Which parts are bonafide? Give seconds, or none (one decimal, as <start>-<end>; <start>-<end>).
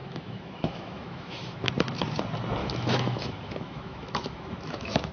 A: 1.7-2.6